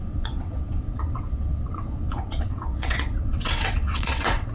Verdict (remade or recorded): remade